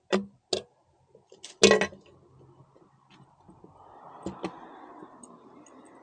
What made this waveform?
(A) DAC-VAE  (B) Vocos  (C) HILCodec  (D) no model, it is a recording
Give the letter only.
D